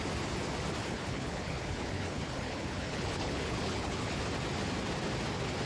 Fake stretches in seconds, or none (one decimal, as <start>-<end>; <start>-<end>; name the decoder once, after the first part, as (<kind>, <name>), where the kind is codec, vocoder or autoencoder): 0.8-4.2 (codec, HILCodec)